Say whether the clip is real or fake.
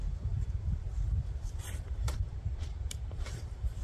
fake